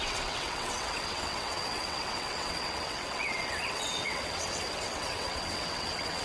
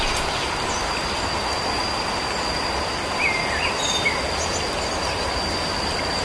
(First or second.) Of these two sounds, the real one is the second